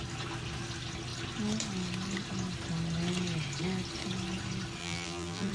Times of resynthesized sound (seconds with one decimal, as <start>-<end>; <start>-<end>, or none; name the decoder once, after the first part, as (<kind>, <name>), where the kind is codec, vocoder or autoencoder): 4.8-5.5 (vocoder, BigVGAN v2)